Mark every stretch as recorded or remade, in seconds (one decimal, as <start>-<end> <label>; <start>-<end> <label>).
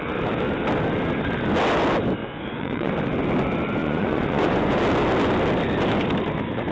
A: 0.0-2.2 recorded; 2.2-2.9 remade; 2.9-3.8 recorded; 3.8-4.8 remade; 4.8-6.7 recorded